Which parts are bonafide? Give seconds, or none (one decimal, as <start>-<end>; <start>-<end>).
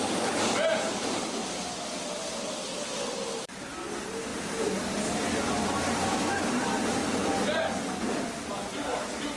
0.0-9.4